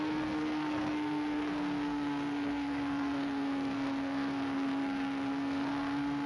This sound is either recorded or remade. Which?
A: remade